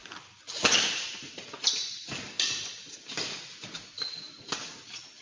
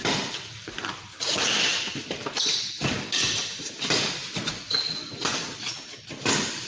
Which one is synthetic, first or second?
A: first